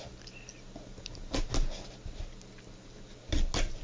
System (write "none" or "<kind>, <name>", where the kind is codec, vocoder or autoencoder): none